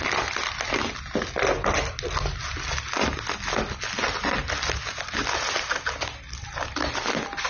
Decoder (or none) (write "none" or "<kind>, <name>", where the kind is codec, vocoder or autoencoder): none